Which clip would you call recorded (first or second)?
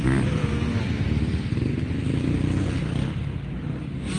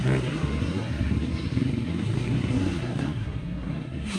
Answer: first